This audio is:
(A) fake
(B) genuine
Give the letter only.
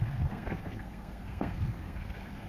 A